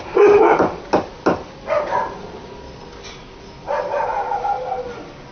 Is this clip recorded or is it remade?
recorded